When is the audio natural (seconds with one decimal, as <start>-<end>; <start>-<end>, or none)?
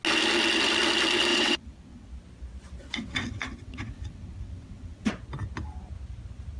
0.0-1.3; 2.1-2.8; 5.1-6.6